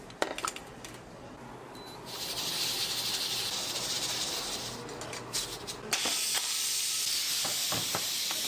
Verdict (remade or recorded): recorded